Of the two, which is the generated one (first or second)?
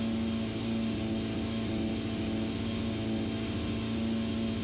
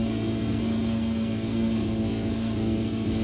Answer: second